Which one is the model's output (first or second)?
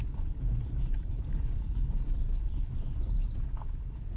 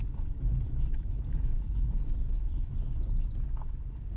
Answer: first